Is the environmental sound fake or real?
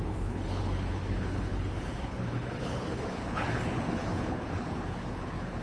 fake